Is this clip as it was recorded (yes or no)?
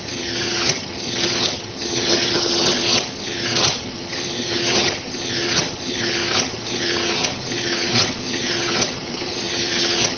no